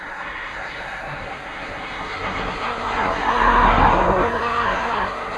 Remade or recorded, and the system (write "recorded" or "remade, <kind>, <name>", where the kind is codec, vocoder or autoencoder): remade, codec, SNAC